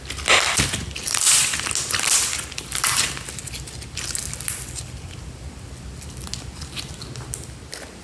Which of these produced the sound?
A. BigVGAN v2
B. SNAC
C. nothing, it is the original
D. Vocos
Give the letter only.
C